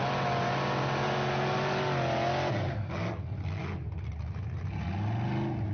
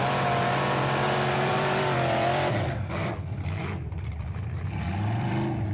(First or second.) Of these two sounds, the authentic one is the first